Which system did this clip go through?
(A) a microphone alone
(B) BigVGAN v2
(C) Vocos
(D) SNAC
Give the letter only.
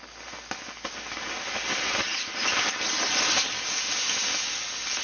A